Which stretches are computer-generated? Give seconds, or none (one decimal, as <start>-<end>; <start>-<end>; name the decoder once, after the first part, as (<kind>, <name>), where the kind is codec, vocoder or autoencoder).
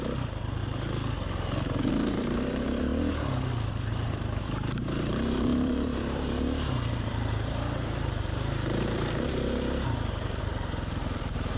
0.0-0.6 (vocoder, BigVGAN v2); 1.9-2.9; 3.9-11.6